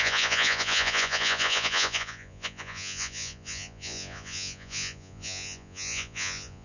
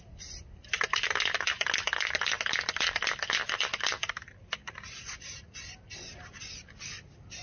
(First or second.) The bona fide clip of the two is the second